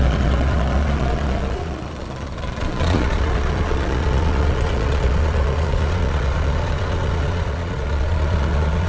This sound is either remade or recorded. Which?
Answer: remade